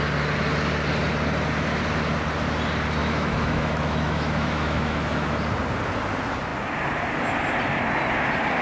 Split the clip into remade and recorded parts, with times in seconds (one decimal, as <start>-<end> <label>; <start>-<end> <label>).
0.0-3.0 recorded; 3.0-5.4 remade; 5.4-8.6 recorded